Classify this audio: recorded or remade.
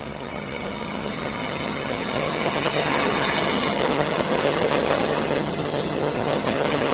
remade